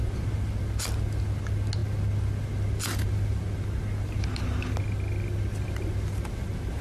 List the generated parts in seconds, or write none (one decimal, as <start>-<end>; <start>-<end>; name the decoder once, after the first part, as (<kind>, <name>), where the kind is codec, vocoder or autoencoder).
none